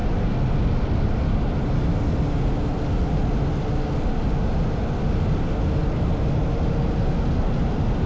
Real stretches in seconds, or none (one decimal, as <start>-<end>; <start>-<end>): 0.0-8.1

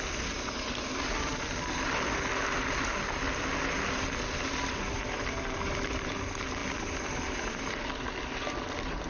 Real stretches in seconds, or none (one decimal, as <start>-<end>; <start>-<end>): 1.3-4.7

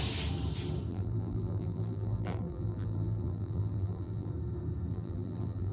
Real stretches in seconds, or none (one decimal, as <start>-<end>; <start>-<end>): 0.0-0.9; 4.3-4.9

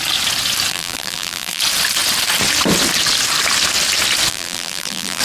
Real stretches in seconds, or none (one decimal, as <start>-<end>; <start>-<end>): 0.0-0.7; 1.6-4.3

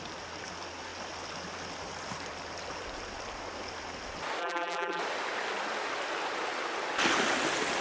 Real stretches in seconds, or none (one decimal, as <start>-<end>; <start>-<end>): 0.0-4.4; 5.0-7.8

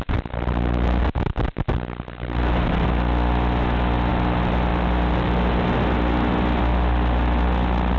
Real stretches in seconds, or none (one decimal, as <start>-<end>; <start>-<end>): 0.0-8.0

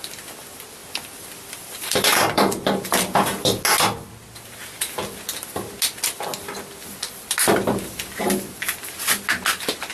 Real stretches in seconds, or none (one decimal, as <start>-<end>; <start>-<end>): 0.0-0.8; 3.6-9.9

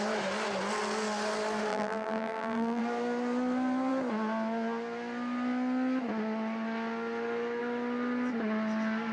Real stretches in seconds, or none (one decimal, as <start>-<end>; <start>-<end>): 0.0-1.7; 2.8-9.1